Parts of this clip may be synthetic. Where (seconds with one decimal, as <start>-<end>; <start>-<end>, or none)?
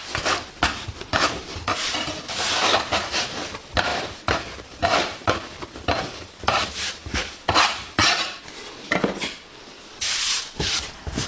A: 3.9-8.7